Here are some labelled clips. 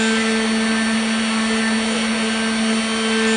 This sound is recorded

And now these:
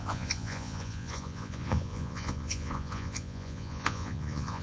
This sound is remade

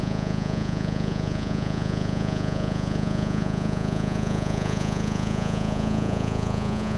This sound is remade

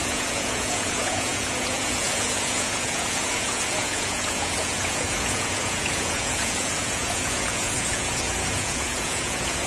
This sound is remade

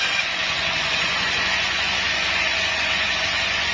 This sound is remade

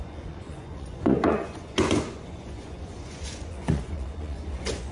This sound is remade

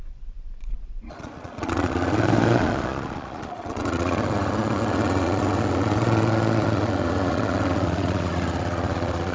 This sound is remade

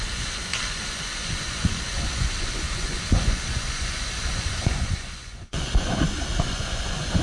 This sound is remade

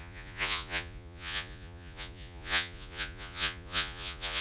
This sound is remade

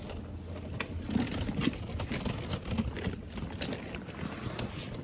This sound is recorded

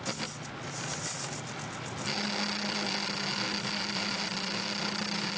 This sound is recorded